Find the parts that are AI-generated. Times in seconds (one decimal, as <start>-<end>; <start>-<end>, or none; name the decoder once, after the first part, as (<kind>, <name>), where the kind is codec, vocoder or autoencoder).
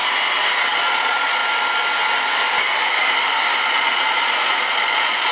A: 0.7-1.4 (vocoder, Vocos); 3.7-5.3